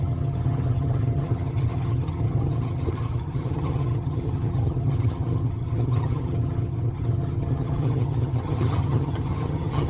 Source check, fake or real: fake